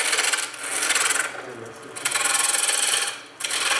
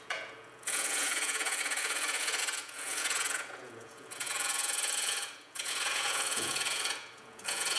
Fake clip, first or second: second